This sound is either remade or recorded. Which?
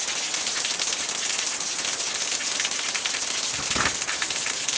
recorded